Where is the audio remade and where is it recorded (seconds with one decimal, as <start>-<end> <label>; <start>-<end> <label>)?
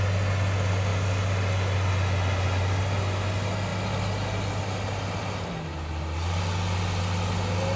0.0-7.8 recorded